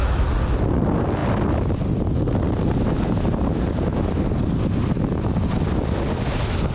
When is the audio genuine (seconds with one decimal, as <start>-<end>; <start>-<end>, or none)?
0.0-6.7